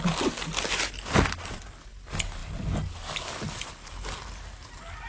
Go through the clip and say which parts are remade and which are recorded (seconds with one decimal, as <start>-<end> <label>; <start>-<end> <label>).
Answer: 0.0-5.1 recorded